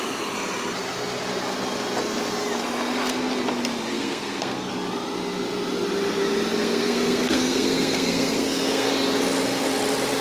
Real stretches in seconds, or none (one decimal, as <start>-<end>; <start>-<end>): 0.0-3.9; 4.7-6.6; 8.9-10.2

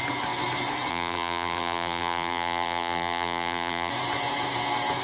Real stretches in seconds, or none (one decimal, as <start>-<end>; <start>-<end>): 0.0-0.9; 3.9-5.0

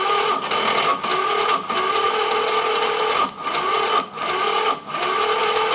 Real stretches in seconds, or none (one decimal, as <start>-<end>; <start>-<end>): 0.0-5.7

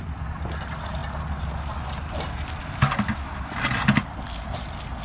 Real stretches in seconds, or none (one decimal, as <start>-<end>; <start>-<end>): 0.0-5.0

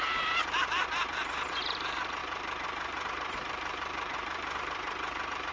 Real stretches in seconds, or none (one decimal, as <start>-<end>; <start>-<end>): none

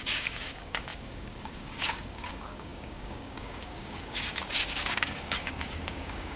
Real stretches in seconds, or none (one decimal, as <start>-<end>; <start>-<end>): none